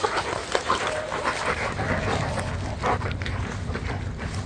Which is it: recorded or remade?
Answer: recorded